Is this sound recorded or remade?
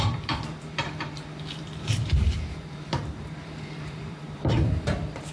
remade